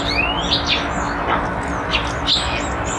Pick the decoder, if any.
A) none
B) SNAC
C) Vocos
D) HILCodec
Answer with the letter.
A